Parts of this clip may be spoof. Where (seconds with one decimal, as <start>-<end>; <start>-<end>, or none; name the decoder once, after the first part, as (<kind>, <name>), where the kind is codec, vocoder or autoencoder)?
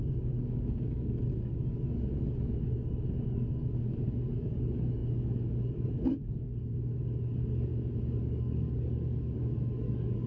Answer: 0.0-7.7 (codec, DAC); 8.2-10.3